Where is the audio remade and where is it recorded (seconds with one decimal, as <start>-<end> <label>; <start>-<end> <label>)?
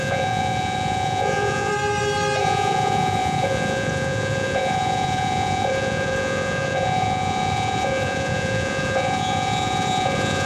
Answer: 0.0-1.7 remade; 1.7-2.4 recorded; 2.4-10.5 remade